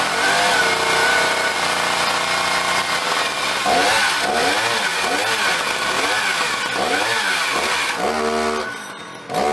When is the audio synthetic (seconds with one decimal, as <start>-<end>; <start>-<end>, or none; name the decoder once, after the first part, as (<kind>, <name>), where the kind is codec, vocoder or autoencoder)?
none